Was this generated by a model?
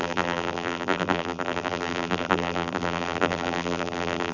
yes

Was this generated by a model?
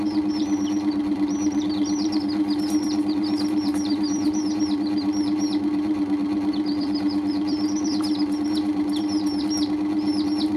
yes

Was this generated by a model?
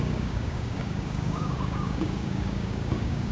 yes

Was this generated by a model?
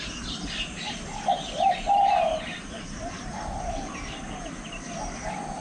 no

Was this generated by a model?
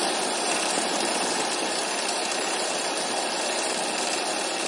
yes